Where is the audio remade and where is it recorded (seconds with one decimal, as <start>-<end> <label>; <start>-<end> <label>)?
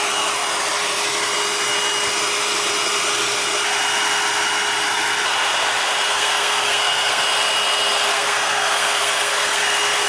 0.0-6.1 recorded; 6.1-7.2 remade; 7.2-8.1 recorded; 8.1-10.1 remade